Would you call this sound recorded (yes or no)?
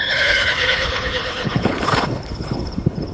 no